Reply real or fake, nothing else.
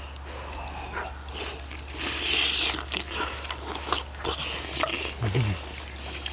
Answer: real